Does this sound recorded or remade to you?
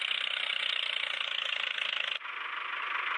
recorded